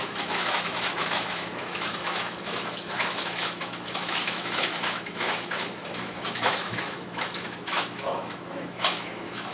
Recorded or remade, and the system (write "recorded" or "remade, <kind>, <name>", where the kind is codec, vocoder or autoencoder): remade, autoencoder, DAC-VAE